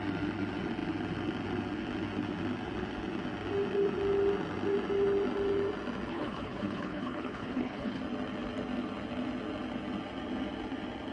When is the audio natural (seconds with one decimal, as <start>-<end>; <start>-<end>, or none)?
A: 0.0-6.1; 8.0-11.1